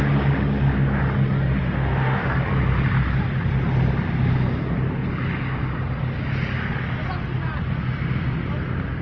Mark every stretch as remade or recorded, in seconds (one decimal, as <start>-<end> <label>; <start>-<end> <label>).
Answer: 0.0-1.6 recorded; 1.6-2.2 remade; 2.2-9.0 recorded